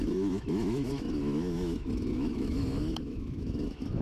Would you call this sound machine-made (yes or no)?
yes